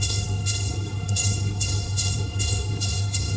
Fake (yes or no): yes